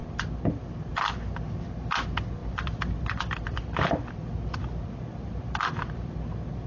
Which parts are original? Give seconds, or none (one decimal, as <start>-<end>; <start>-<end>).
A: 0.0-2.4; 4.1-6.7